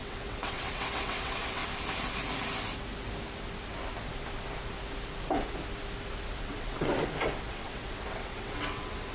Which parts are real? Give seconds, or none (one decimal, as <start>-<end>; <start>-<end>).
1.6-6.4; 6.9-7.5